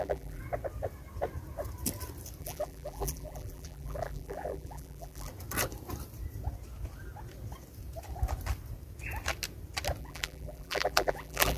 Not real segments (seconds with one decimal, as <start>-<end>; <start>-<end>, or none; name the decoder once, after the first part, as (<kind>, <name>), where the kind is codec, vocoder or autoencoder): 0.0-0.4 (vocoder, BigVGAN v2); 2.4-5.3; 10.0-11.6